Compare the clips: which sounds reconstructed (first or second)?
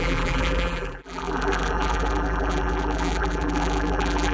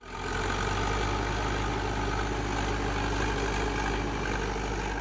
first